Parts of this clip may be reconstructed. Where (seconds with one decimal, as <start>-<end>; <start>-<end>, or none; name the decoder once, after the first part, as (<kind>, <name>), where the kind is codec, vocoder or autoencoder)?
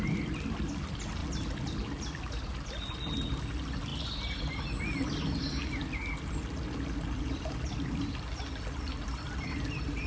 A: none